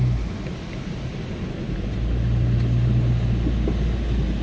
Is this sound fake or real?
real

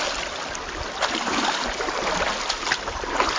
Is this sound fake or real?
real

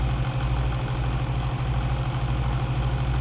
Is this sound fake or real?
real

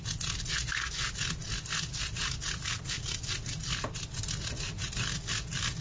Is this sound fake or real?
real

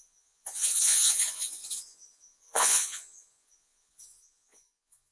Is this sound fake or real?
fake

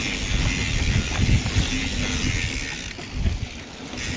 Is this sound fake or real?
real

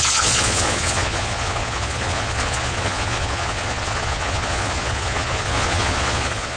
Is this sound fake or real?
fake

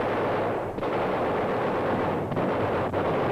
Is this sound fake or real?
real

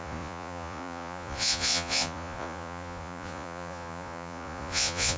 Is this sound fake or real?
fake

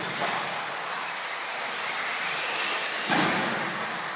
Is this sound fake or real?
real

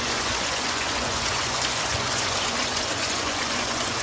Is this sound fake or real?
fake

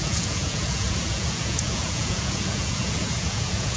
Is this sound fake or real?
fake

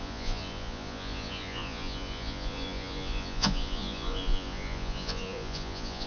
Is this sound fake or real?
fake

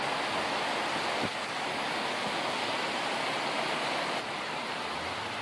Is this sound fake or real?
real